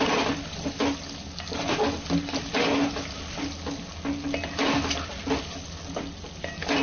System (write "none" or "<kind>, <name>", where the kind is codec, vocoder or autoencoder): none